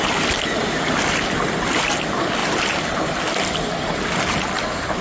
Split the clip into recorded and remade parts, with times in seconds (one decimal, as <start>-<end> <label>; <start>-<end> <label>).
0.0-2.4 recorded; 2.4-3.2 remade; 3.2-5.0 recorded